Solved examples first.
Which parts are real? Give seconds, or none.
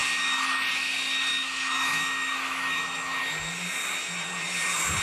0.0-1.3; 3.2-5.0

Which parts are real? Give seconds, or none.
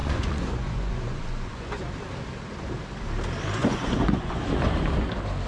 1.8-3.6; 4.5-5.5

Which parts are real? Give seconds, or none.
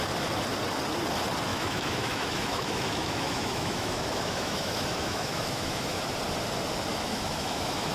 0.0-1.5; 6.0-6.9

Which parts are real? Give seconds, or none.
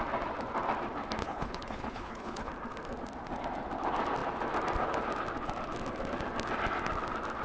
0.0-1.2; 2.5-7.4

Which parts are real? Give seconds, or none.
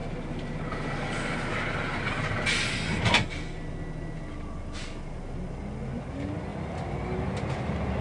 0.0-8.0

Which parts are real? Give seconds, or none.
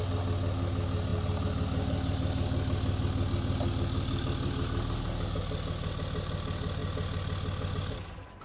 0.0-8.4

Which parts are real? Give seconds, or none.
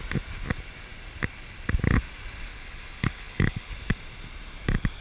0.0-2.5; 3.7-5.0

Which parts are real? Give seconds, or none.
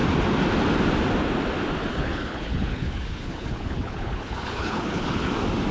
0.0-1.9; 5.3-5.7